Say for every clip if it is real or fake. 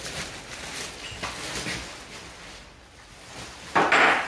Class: real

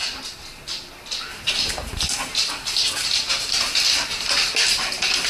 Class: real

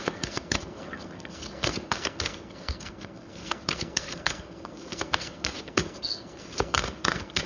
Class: fake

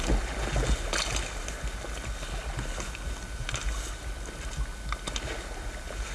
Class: real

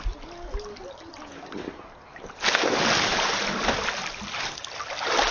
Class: real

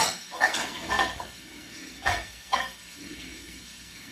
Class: fake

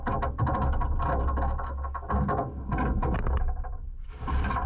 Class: real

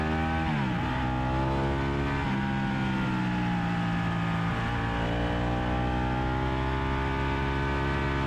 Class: real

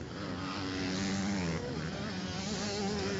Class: real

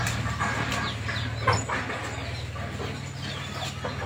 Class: real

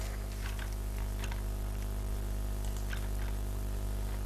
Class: real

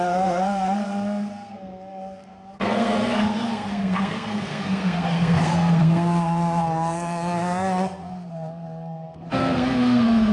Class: fake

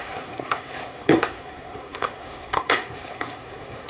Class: fake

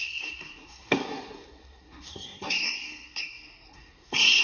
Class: fake